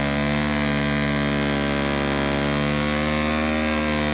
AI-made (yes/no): no